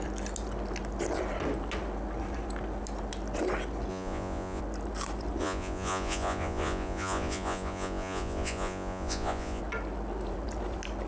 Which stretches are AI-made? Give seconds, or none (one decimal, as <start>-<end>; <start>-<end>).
3.9-4.6; 5.4-9.6